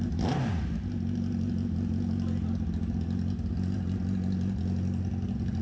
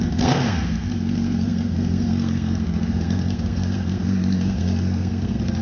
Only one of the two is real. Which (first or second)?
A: first